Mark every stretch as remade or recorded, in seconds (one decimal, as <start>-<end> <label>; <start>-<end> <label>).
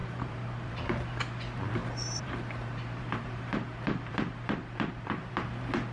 0.0-0.7 remade; 0.7-1.8 recorded; 1.8-5.3 remade; 5.3-5.9 recorded